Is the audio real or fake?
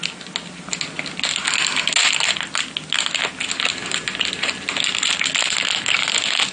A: real